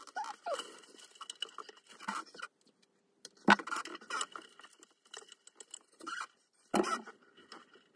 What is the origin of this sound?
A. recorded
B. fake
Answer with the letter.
A